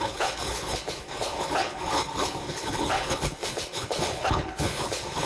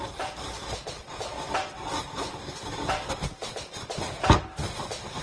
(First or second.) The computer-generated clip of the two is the first